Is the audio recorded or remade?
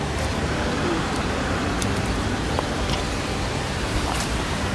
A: remade